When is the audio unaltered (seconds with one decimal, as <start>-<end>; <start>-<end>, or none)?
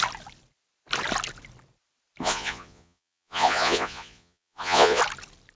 0.0-2.2; 5.0-5.6